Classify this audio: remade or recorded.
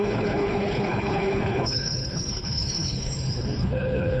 remade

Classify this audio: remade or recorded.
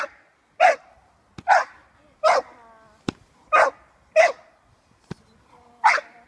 recorded